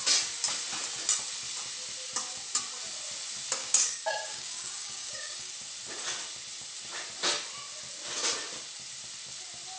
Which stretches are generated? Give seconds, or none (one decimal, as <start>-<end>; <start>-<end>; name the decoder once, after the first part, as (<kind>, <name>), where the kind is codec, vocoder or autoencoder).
3.6-5.5 (codec, DAC)